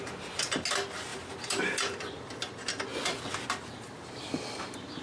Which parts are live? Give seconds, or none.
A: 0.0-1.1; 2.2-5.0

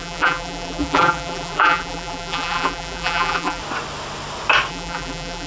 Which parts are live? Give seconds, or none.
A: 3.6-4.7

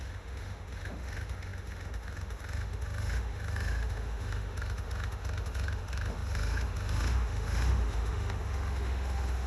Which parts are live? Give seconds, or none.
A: none